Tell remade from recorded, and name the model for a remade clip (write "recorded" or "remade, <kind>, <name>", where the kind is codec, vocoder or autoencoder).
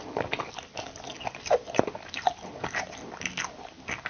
recorded